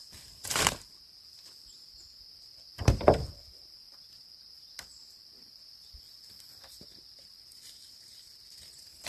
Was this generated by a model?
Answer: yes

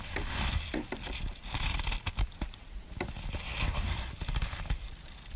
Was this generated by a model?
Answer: no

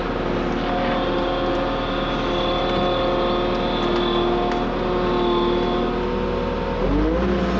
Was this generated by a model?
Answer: no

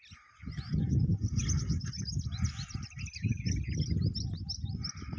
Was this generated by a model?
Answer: no